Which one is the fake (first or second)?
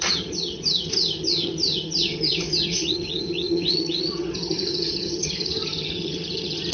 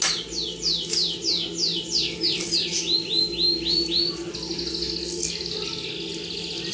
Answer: first